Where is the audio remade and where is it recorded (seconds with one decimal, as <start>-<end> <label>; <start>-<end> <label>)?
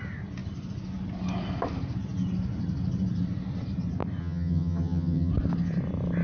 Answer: 0.0-4.2 recorded; 4.2-5.3 remade; 5.3-6.2 recorded